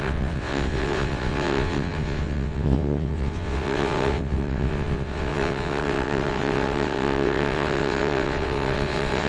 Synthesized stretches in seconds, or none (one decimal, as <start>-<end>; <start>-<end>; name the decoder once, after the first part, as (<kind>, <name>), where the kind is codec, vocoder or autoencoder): 0.0-9.3 (vocoder, WaveNeXt)